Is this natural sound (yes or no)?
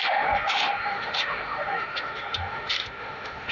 no